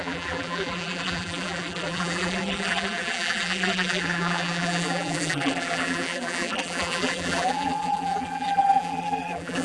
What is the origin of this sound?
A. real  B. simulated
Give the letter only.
B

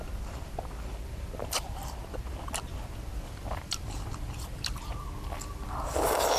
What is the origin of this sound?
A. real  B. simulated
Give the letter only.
A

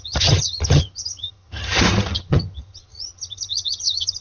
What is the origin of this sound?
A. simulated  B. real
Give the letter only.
A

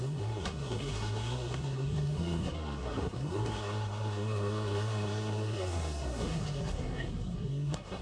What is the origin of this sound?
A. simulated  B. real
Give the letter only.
A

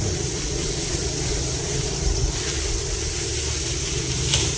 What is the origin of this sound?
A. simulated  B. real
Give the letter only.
B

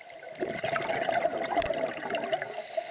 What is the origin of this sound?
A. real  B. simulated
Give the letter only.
A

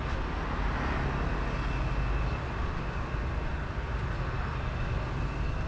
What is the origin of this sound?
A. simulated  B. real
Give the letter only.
B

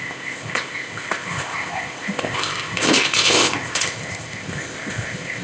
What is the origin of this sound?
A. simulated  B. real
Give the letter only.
A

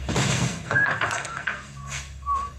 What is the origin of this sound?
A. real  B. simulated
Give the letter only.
B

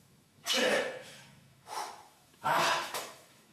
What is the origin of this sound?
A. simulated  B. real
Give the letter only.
A